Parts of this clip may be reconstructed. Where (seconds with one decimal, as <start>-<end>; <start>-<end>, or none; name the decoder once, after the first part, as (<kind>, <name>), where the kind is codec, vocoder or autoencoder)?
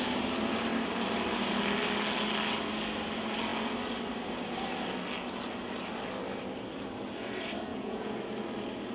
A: 7.7-8.2 (vocoder, Vocos)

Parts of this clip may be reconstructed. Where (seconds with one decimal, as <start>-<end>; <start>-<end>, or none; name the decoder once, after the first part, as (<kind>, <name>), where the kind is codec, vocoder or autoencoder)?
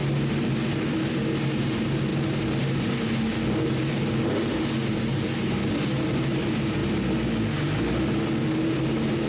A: none